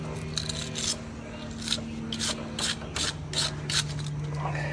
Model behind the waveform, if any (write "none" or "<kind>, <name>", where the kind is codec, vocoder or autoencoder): none